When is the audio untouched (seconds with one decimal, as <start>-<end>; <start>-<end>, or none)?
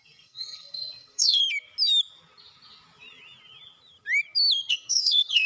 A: 1.4-4.7